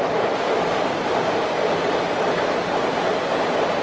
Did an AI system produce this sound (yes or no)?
no